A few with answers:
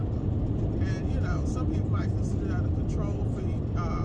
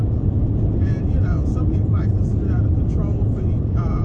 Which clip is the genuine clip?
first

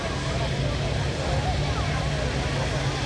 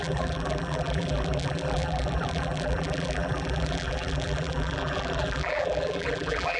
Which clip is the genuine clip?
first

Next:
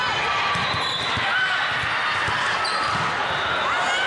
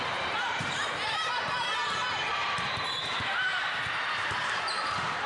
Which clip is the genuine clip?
first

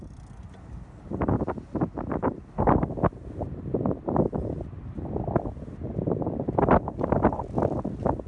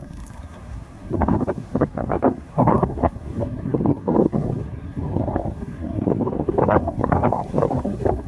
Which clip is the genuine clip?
first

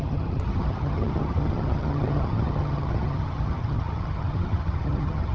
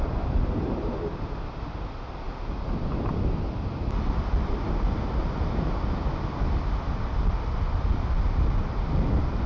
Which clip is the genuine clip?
second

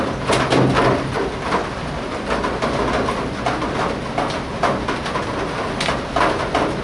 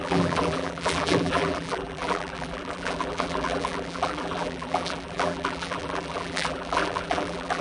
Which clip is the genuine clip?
first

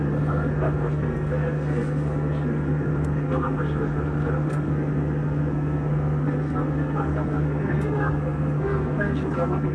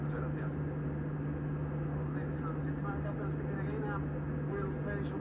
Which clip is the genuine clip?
second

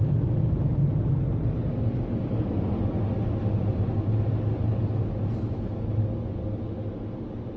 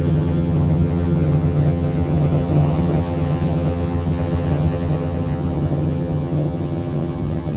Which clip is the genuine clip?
first